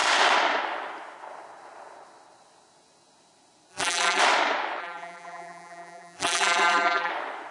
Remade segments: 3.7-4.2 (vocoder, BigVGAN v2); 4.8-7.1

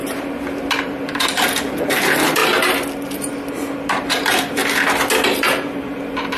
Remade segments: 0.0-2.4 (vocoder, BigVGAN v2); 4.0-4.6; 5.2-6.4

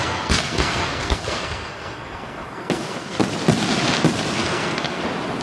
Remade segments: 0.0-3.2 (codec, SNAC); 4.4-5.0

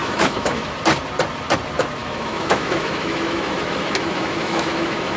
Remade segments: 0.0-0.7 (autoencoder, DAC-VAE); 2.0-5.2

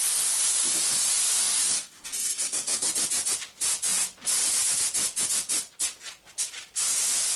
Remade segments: 1.4-2.9 (codec, DAC)

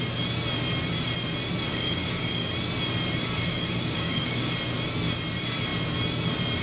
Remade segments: 1.7-2.5 (codec, DAC); 3.4-4.5

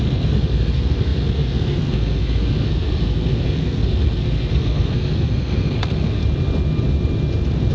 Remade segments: 0.0-6.2 (codec, SNAC)

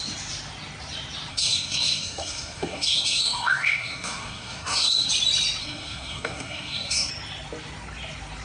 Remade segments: 1.3-5.1 (codec, SNAC); 5.6-7.1